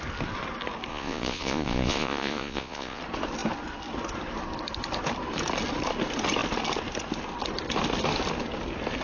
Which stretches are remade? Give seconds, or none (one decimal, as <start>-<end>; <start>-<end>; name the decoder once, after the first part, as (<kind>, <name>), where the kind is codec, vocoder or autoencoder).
0.9-3.0 (vocoder, Vocos)